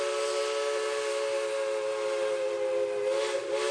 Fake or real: real